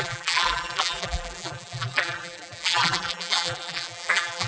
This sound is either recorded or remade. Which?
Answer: remade